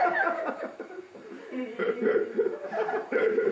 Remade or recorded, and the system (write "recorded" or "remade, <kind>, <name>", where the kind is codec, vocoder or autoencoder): remade, vocoder, BigVGAN v2